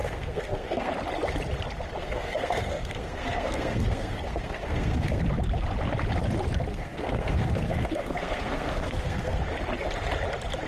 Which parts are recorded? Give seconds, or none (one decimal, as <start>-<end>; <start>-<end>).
0.9-2.0; 5.2-6.7; 9.4-10.7